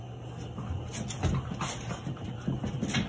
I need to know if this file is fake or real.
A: real